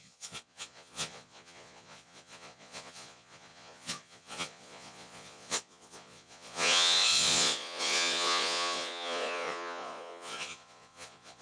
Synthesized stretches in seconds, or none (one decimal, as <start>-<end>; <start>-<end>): 0.0-11.4